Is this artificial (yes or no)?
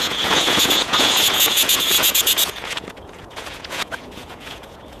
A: yes